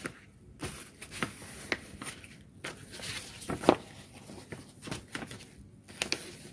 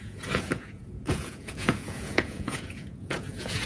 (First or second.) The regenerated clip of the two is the second